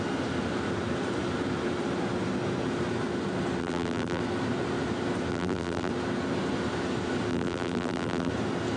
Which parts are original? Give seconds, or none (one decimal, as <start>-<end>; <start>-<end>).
0.0-3.6; 4.2-5.3; 5.9-7.3; 8.3-8.8